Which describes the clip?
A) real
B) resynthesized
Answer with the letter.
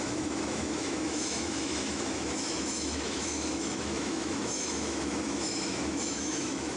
B